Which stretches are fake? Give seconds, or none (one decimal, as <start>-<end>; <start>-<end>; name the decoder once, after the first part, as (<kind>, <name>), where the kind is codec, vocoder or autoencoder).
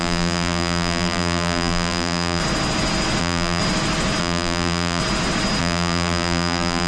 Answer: 0.0-2.4 (vocoder, BigVGAN v2); 3.2-3.6; 4.2-5.0; 5.6-6.9